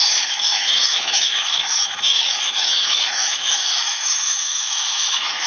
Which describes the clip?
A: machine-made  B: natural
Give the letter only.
A